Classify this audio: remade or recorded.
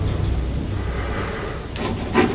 recorded